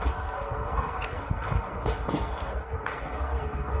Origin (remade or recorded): remade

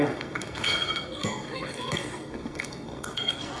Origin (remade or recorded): remade